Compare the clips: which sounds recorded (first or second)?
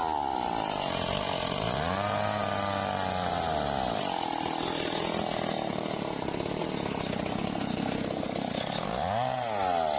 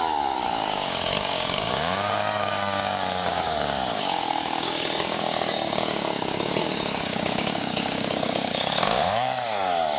first